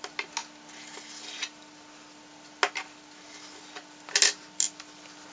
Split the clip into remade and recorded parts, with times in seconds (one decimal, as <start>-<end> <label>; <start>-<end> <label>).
0.0-5.3 recorded